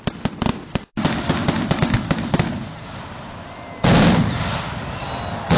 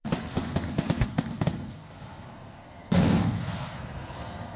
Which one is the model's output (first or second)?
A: second